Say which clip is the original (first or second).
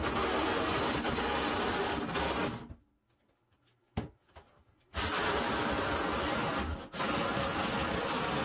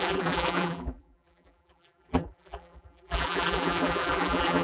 first